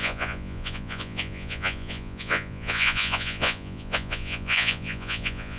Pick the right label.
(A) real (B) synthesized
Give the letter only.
B